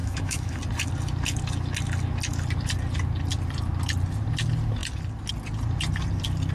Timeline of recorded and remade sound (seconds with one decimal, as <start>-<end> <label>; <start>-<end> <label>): 0.0-0.6 remade; 0.6-6.5 recorded